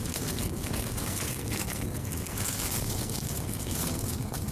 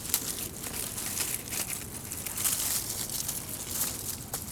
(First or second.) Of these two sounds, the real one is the second